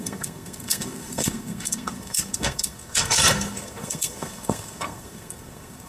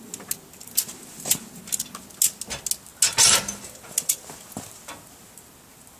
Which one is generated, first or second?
first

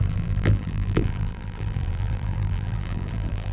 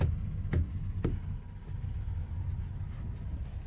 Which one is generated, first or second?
first